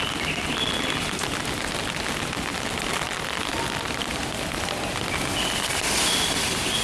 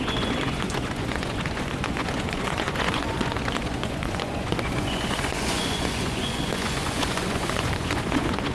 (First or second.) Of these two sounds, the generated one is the second